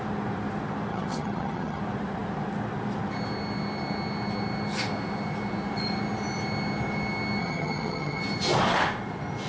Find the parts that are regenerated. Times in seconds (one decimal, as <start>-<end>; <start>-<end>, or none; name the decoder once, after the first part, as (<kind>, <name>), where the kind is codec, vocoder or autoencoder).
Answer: 0.9-1.8 (vocoder, HiFi-GAN); 7.4-8.2